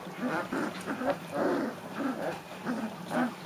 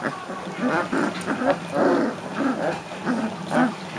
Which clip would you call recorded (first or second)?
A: second